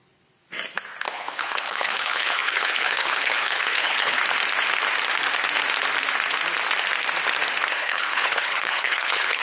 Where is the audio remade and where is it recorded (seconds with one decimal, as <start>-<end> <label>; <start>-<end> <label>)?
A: 0.0-1.1 recorded; 1.1-4.2 remade; 4.2-7.7 recorded; 7.7-9.4 remade